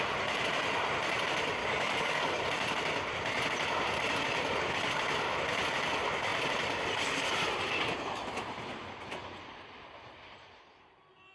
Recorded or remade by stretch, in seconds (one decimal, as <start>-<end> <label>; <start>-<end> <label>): 0.0-1.6 recorded; 1.6-2.4 remade; 2.4-11.3 recorded